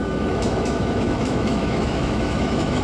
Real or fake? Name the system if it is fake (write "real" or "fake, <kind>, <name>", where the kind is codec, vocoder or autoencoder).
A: fake, autoencoder, DAC-VAE